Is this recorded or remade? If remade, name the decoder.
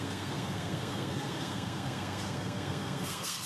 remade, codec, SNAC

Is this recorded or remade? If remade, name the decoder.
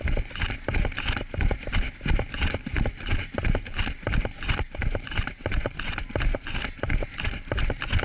recorded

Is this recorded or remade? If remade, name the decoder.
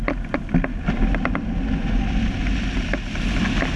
recorded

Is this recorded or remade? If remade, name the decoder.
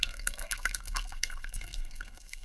remade, codec, SNAC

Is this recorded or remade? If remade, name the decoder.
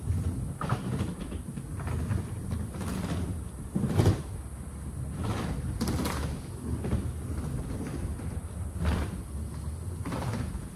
recorded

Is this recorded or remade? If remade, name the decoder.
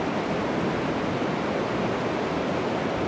recorded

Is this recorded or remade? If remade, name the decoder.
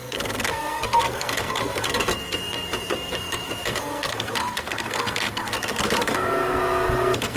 remade, codec, SNAC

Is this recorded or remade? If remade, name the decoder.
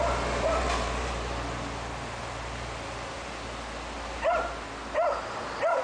recorded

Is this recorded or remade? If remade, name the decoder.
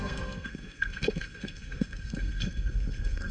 remade, codec, SNAC